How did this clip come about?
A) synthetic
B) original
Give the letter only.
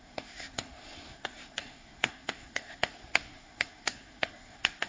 A